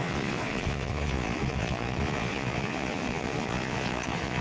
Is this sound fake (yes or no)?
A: yes